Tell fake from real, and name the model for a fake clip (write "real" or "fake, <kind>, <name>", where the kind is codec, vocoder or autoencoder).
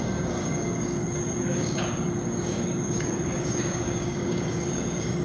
fake, codec, DAC